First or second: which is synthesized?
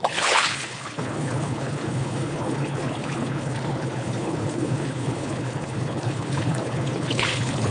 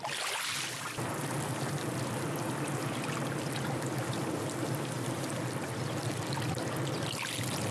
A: first